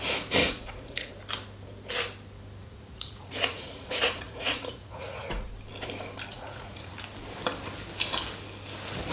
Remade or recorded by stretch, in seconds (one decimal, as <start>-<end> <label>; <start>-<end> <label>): 0.0-0.4 recorded; 0.4-1.1 remade; 1.1-2.6 recorded; 2.6-5.5 remade; 5.5-6.3 recorded; 6.3-6.9 remade; 6.9-9.1 recorded